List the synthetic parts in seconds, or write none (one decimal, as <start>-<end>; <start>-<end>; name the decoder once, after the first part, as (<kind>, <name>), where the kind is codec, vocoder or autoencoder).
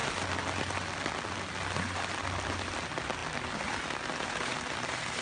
none